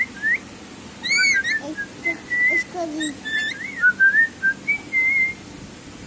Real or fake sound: real